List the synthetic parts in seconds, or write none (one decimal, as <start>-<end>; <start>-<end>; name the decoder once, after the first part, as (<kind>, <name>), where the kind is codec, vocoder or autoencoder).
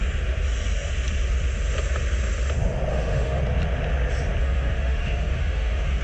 2.9-3.4 (autoencoder, DAC-VAE); 4.4-6.0